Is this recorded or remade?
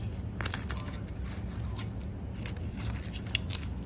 recorded